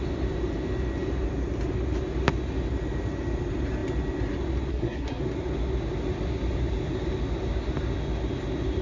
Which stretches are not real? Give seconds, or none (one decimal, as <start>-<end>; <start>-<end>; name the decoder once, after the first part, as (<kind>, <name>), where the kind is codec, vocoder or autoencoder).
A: 4.7-5.2 (codec, SNAC)